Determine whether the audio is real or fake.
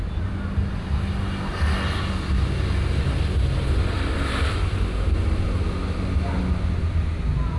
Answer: real